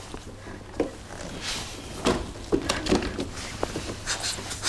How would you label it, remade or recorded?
recorded